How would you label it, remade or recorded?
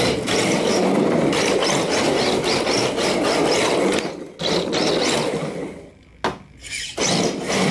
recorded